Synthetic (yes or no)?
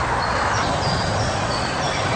yes